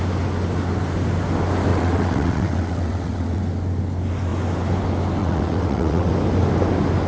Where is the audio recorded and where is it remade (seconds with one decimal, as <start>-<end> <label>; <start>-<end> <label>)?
0.0-1.7 recorded; 1.7-3.4 remade; 3.4-5.2 recorded; 5.2-6.1 remade; 6.1-7.1 recorded